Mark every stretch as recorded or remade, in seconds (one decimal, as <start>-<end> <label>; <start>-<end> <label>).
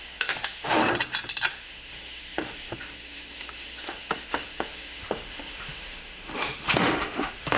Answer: 0.0-0.8 remade; 0.8-1.5 recorded; 1.5-7.6 remade